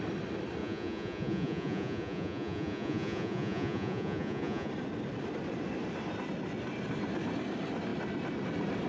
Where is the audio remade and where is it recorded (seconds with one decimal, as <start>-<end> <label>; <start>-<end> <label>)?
0.0-0.6 recorded; 0.6-4.7 remade; 4.7-8.9 recorded